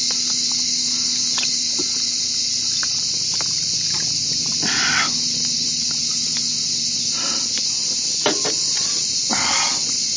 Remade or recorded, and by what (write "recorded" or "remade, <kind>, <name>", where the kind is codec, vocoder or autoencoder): recorded